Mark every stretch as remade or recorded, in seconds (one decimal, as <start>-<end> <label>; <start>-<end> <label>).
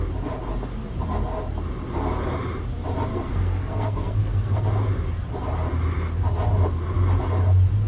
0.0-3.1 recorded; 3.1-4.7 remade; 4.7-7.9 recorded